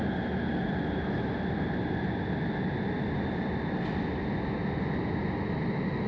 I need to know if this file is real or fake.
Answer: real